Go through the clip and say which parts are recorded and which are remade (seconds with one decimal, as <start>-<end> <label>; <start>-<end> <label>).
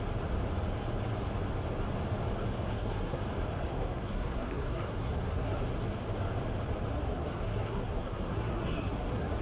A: 0.0-2.7 recorded; 2.7-3.2 remade; 3.2-3.7 recorded; 3.7-5.6 remade; 5.6-6.9 recorded; 6.9-9.4 remade